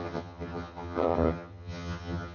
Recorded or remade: remade